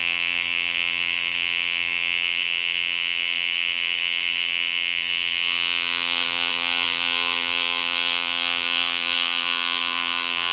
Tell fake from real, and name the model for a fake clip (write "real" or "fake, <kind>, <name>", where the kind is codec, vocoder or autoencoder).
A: fake, vocoder, BigVGAN v2